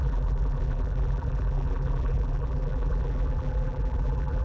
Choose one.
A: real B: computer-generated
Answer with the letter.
B